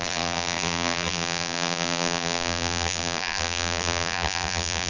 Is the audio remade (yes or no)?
yes